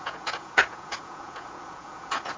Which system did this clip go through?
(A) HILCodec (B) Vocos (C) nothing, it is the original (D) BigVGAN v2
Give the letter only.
B